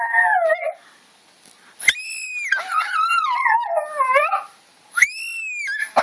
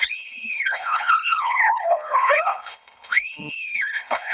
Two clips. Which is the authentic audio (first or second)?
first